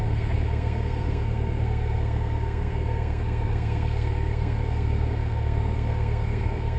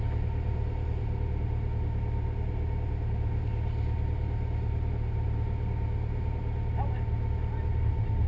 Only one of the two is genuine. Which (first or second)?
second